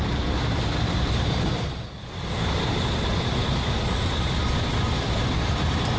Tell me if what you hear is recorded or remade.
recorded